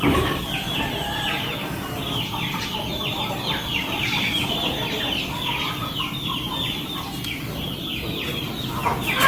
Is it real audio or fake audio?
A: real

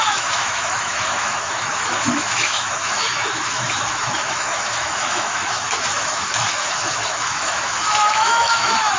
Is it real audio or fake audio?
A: fake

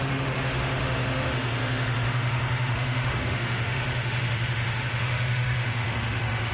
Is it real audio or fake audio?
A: fake